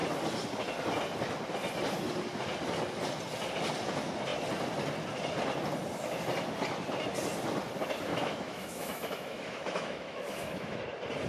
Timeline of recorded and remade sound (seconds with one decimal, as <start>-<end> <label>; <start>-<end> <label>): 0.0-8.1 recorded; 8.1-10.8 remade; 10.8-11.3 recorded